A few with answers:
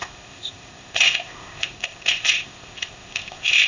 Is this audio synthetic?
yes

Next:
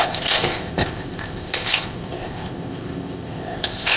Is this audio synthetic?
yes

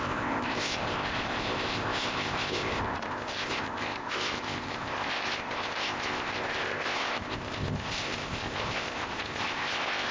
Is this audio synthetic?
yes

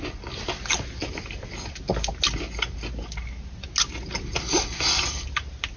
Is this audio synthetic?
no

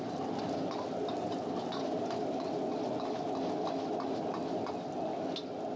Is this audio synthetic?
no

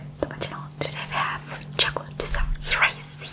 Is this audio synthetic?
no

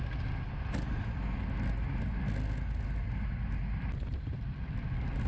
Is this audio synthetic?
no